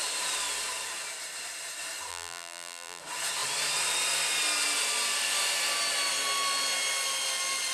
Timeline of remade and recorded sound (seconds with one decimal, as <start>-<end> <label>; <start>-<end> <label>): 0.0-2.1 recorded; 2.1-3.0 remade; 3.0-7.7 recorded